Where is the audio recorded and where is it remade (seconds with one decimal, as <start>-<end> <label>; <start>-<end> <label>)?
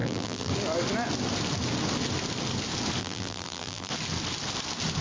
0.0-0.5 remade; 0.5-3.0 recorded; 3.0-3.9 remade; 3.9-5.0 recorded